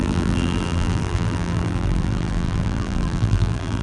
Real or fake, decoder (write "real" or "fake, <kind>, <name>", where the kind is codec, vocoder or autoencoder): fake, vocoder, BigVGAN v2